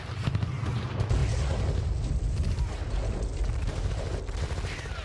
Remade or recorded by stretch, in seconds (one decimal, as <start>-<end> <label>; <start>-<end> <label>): 0.0-5.0 recorded